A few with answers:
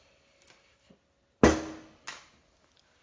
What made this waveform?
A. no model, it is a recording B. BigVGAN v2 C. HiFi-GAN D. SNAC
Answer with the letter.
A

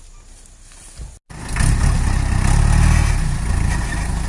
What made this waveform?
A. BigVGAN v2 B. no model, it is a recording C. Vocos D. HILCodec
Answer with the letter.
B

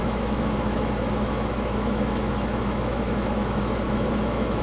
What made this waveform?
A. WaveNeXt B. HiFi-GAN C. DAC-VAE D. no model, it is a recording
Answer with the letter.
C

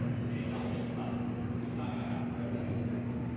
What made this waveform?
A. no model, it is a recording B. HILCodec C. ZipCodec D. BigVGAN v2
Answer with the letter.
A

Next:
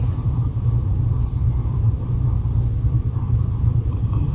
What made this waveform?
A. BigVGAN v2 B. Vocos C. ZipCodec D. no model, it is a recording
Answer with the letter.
A